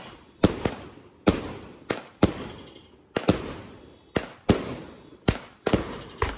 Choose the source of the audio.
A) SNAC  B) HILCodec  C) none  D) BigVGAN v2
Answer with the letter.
D